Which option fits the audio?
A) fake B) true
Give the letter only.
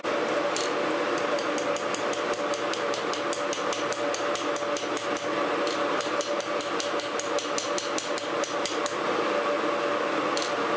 B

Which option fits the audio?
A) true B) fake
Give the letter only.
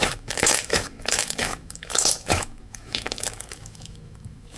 B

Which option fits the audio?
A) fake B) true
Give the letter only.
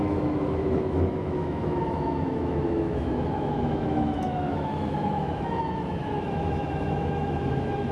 A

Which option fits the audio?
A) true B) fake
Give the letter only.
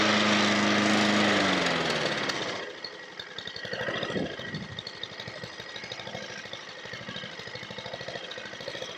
A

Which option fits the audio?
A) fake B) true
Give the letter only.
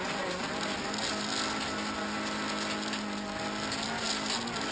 B